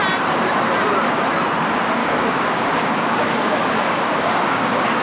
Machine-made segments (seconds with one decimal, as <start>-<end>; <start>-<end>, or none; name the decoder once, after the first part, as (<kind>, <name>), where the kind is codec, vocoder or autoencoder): 2.0-5.0 (codec, DAC)